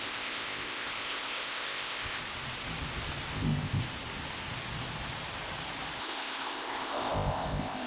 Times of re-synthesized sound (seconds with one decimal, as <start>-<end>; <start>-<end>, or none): 0.0-2.2; 3.3-3.8; 6.0-7.9